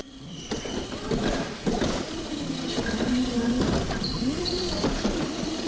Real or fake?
fake